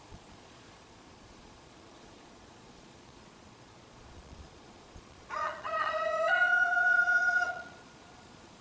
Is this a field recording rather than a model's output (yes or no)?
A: no